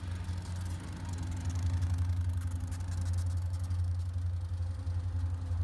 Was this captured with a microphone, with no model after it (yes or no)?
yes